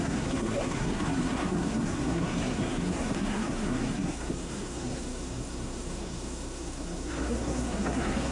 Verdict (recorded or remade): remade